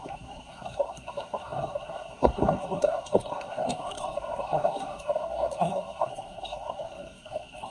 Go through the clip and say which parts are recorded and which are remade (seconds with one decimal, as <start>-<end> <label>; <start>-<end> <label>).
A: 0.0-7.7 remade

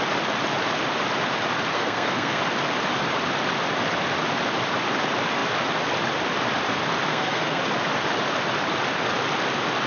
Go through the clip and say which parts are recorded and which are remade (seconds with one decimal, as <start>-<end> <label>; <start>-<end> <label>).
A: 0.0-1.7 recorded; 1.7-2.4 remade; 2.4-7.1 recorded; 7.1-7.6 remade; 7.6-9.9 recorded

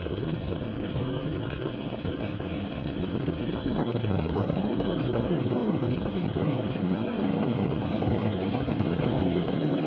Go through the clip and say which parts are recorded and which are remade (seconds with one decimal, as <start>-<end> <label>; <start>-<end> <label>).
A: 0.0-9.9 remade